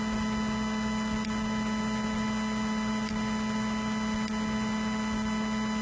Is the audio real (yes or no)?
yes